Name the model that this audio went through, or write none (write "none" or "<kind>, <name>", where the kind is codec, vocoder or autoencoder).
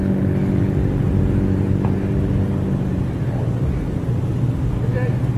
none